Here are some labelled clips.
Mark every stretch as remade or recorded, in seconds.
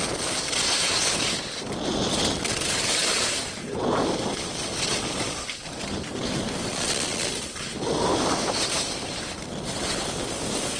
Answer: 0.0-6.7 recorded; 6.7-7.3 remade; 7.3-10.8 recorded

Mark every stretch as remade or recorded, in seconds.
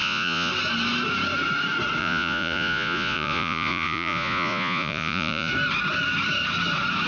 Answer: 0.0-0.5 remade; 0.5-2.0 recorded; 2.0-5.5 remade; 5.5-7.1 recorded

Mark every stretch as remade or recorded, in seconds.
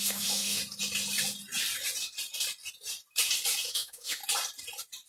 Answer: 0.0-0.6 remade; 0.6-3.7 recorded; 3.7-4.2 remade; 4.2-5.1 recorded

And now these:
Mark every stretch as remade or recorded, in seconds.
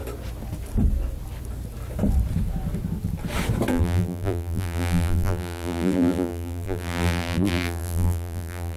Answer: 0.0-3.7 recorded; 3.7-8.8 remade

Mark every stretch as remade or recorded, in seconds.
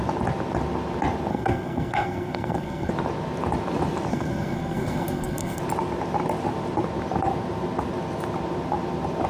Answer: 0.0-1.3 recorded; 1.3-2.9 remade; 2.9-4.1 recorded; 4.1-5.6 remade; 5.6-9.3 recorded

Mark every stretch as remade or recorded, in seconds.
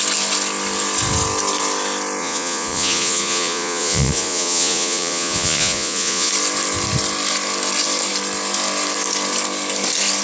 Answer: 0.0-2.2 recorded; 2.2-6.3 remade; 6.3-10.2 recorded